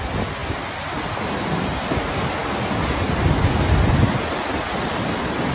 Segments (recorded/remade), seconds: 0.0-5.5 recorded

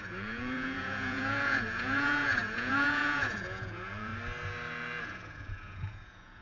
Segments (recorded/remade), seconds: 0.0-4.1 remade; 4.1-5.0 recorded; 5.0-6.4 remade

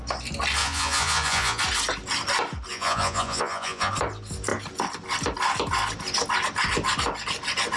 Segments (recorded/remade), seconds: 0.0-0.6 recorded; 0.6-1.6 remade; 1.6-2.7 recorded; 2.7-3.9 remade; 3.9-7.8 recorded

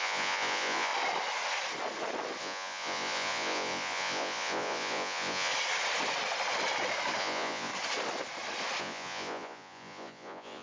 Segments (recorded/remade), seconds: 0.0-0.9 remade; 0.9-2.4 recorded; 2.4-5.5 remade; 5.5-7.2 recorded; 7.2-7.7 remade; 7.7-8.8 recorded; 8.8-10.6 remade

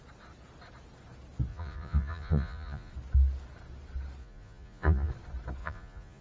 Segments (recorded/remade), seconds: 0.0-1.5 recorded; 1.5-2.9 remade; 2.9-4.2 recorded; 4.2-5.1 remade; 5.1-5.6 recorded; 5.6-6.2 remade

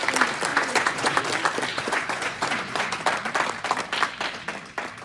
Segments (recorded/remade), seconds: 0.0-0.5 recorded; 0.5-1.2 remade; 1.2-1.7 recorded; 1.7-3.0 remade; 3.0-5.0 recorded

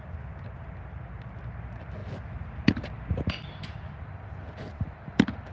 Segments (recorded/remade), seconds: 0.0-5.5 recorded

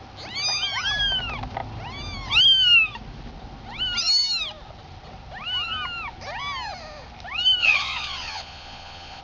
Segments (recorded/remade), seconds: 0.0-7.6 recorded; 7.6-9.2 remade